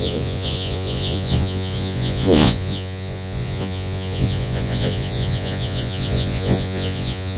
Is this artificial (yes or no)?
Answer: yes